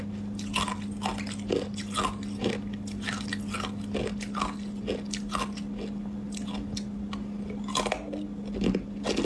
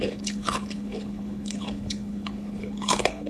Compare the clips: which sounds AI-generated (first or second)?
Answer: second